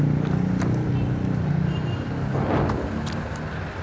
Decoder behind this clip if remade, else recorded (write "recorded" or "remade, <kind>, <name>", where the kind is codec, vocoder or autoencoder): recorded